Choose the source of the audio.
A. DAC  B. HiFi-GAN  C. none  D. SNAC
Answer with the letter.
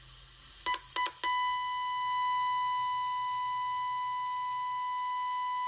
C